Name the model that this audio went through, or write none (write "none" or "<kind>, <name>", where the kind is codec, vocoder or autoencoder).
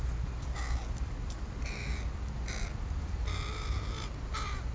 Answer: none